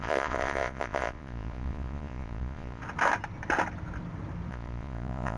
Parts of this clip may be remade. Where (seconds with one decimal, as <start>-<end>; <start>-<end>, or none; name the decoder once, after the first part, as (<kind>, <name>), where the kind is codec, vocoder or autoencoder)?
0.0-2.8 (vocoder, Vocos); 4.5-5.4